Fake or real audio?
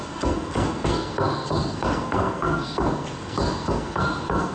fake